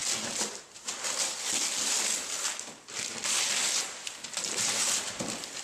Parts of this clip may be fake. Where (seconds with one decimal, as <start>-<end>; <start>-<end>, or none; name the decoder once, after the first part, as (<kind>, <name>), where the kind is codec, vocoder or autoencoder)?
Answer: none